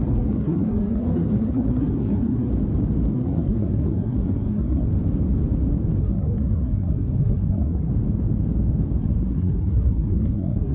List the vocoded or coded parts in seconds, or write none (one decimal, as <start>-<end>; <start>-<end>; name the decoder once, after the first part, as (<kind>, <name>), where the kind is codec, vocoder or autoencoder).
0.0-2.5 (codec, SNAC); 3.1-4.9; 6.0-7.9; 9.0-10.7